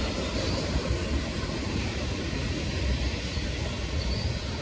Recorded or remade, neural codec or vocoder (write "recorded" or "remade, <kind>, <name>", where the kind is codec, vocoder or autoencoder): remade, vocoder, BigVGAN v2